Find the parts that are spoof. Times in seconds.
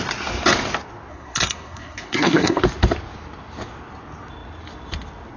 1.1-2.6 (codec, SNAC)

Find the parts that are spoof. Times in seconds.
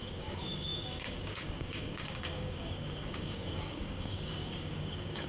0.0-5.3 (codec, DAC)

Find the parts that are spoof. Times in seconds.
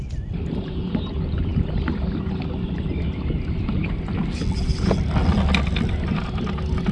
none